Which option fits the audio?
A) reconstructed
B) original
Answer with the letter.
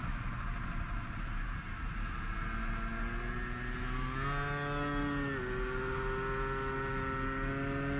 B